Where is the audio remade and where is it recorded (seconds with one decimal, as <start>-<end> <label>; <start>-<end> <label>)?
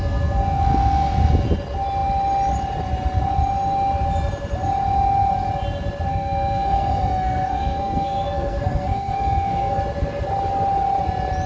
0.0-6.1 recorded; 6.1-9.8 remade; 9.8-11.5 recorded